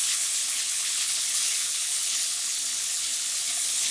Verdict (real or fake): fake